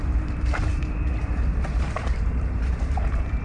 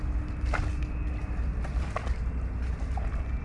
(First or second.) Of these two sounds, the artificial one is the first